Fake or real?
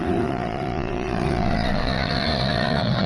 fake